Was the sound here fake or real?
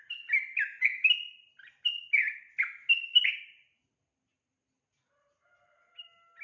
real